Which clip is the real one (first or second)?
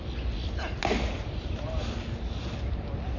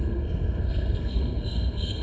first